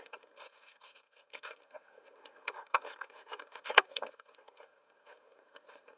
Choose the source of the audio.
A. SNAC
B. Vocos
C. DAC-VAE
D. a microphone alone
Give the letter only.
A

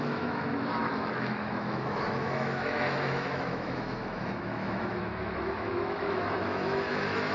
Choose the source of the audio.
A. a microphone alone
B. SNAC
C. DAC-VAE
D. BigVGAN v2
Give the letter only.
C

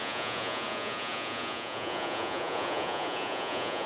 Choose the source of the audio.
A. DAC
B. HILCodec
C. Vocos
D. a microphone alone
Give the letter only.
C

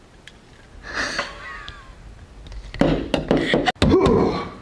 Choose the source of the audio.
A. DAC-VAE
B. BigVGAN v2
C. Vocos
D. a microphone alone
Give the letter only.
D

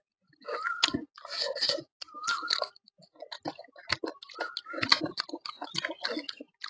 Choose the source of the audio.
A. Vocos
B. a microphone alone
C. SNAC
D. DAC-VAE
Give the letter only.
B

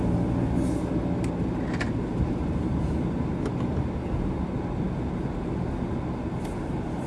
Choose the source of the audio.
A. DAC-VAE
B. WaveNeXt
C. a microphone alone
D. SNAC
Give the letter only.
C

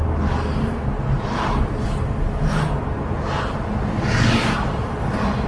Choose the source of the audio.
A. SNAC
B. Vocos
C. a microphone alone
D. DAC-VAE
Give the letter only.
C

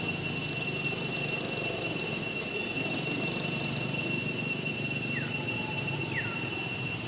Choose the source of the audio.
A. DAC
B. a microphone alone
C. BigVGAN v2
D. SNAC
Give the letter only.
C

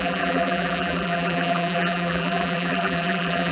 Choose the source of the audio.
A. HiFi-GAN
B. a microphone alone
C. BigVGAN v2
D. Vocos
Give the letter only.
C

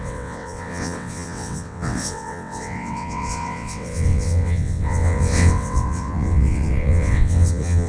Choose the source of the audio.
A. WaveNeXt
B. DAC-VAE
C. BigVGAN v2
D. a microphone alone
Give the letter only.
A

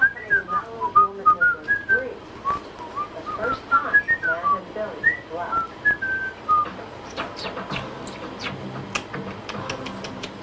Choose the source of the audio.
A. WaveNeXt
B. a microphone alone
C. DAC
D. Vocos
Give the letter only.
B